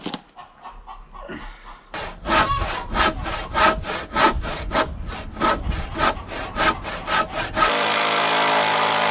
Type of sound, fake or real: real